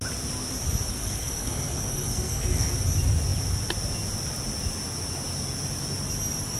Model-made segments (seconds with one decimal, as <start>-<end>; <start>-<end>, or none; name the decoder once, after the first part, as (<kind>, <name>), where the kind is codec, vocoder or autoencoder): 0.9-2.7 (codec, SNAC)